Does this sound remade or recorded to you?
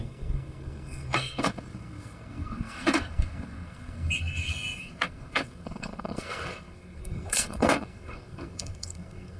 remade